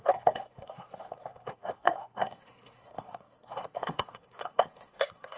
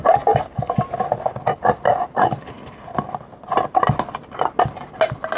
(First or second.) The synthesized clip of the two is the first